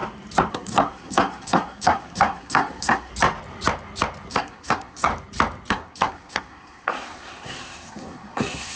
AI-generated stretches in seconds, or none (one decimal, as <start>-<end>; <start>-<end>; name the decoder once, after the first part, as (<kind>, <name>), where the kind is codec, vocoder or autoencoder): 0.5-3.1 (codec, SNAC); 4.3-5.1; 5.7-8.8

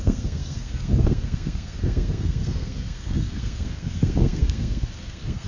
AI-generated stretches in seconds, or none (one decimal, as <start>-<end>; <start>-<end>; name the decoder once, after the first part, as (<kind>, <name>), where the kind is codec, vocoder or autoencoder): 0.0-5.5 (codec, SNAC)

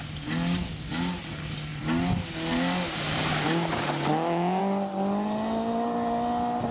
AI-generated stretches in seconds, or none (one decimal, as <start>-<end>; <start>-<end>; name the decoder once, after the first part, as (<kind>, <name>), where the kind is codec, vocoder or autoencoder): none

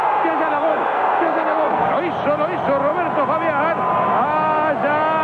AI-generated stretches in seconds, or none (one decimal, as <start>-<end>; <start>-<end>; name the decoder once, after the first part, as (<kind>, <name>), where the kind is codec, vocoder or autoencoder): 0.7-1.9 (codec, SNAC)

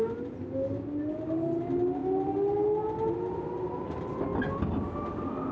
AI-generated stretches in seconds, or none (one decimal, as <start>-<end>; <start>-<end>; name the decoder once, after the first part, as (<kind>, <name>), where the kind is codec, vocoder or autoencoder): none